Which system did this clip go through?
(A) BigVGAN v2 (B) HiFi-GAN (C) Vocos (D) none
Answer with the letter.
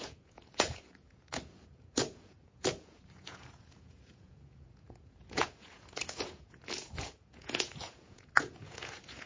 C